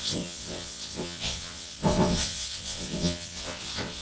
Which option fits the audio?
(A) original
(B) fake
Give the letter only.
B